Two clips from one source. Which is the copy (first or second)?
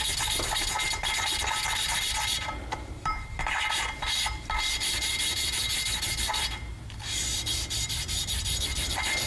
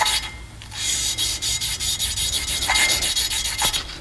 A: first